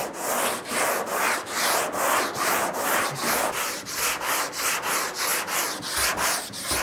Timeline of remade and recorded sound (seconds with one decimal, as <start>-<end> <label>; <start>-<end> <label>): 0.0-1.1 recorded; 1.1-4.3 remade; 4.3-6.8 recorded